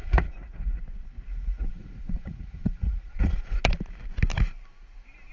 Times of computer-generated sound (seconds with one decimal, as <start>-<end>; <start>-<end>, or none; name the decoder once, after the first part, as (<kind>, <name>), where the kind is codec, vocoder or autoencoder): 0.0-0.8 (vocoder, Vocos); 1.3-3.6